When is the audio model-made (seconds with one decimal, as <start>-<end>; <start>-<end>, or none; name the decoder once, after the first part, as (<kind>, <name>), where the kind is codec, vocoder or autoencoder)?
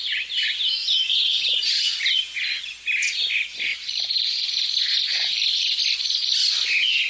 0.8-2.0 (vocoder, BigVGAN v2); 3.7-5.8